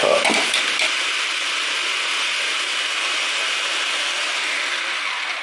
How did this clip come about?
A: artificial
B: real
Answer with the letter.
B